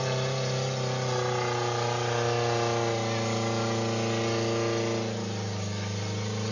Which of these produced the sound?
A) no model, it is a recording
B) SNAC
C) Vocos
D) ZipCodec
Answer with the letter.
A